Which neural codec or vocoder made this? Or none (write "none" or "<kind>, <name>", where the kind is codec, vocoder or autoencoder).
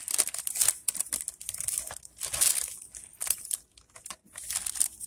none